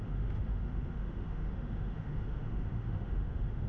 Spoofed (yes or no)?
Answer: yes